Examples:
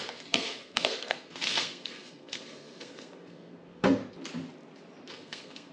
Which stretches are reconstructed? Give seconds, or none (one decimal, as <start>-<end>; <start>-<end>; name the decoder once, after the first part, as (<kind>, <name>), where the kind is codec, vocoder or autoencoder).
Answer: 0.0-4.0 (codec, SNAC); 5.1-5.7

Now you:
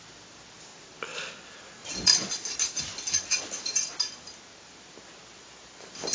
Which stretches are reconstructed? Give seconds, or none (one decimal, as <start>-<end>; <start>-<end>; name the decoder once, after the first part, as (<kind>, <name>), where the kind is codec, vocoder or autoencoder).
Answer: none

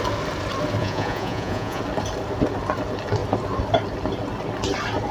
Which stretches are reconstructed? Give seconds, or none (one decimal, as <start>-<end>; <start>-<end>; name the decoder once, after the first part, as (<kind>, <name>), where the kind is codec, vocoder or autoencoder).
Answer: 0.8-1.8 (vocoder, Vocos)

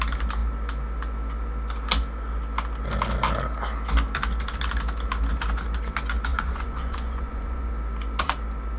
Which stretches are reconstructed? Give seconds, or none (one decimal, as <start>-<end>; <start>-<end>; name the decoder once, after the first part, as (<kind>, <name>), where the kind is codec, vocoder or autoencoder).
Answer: 6.3-7.7 (vocoder, Vocos)

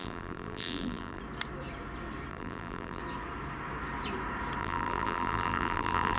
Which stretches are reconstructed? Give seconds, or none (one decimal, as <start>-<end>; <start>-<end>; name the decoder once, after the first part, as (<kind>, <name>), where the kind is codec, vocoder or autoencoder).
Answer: 0.0-1.2 (vocoder, BigVGAN v2); 2.3-3.0; 4.6-6.2